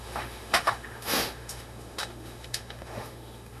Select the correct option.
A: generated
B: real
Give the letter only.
A